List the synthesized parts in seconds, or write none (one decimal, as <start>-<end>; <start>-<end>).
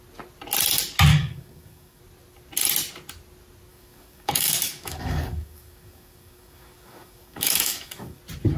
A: 1.1-2.0; 3.7-8.2